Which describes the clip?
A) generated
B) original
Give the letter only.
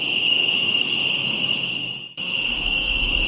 A